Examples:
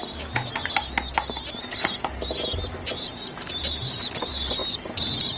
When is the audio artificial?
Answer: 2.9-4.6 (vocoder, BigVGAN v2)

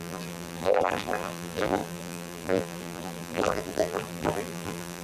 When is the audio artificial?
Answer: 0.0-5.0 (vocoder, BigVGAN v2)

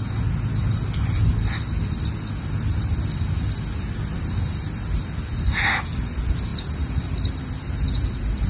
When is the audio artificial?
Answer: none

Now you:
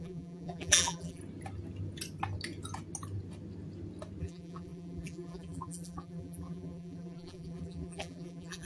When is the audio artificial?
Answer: 0.0-1.2 (vocoder, BigVGAN v2); 4.2-8.7

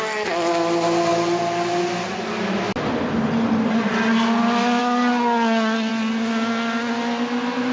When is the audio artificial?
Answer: none

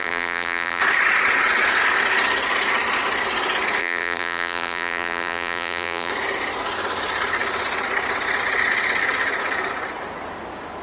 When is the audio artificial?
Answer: 0.0-0.8 (vocoder, BigVGAN v2); 3.8-6.1

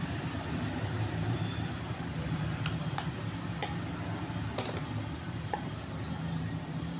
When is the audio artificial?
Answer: 0.0-3.6 (vocoder, BigVGAN v2); 5.2-7.0